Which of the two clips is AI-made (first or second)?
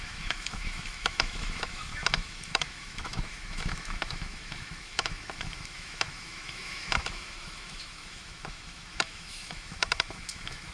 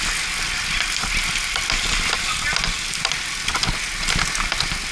first